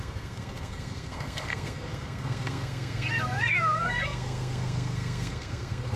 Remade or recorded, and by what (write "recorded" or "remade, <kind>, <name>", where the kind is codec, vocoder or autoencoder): remade, codec, SNAC